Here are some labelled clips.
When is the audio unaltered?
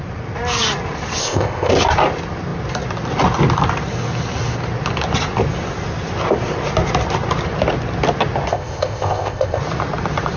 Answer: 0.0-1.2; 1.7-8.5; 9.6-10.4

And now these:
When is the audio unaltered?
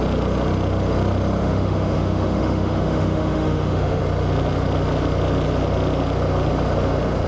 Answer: 0.0-1.4; 4.0-7.3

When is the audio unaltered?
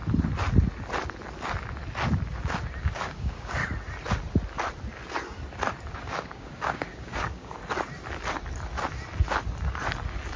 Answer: 0.0-2.8; 3.6-5.9; 7.6-10.4